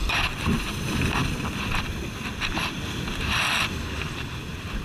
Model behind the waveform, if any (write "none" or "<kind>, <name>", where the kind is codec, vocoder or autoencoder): none